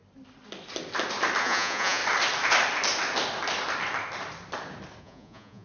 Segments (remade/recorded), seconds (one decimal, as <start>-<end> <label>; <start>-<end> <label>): 0.0-1.4 recorded; 1.4-2.0 remade; 2.0-5.0 recorded; 5.0-5.6 remade